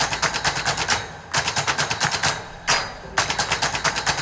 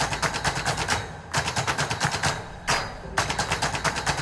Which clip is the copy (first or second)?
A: second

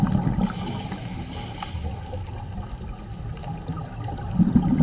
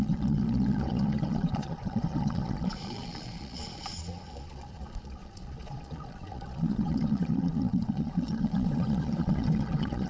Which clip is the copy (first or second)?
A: second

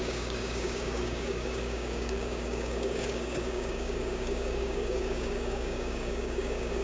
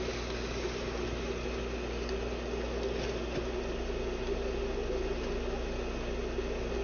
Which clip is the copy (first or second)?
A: first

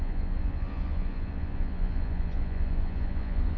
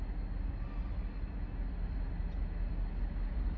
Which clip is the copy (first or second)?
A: first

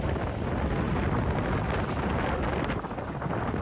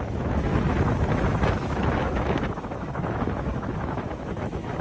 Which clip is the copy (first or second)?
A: second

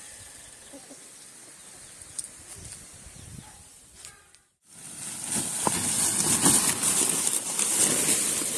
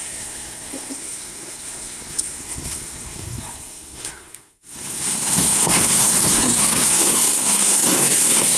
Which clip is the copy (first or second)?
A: second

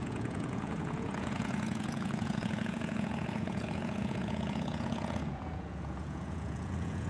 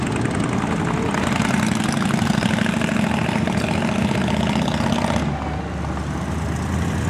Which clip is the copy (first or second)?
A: first